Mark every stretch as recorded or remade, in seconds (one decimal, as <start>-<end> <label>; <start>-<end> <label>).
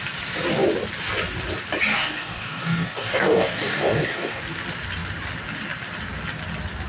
0.0-1.9 recorded; 1.9-4.4 remade; 4.4-6.9 recorded